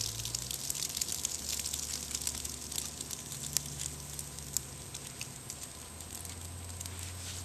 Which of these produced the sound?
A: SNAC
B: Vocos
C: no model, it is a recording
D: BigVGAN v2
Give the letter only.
C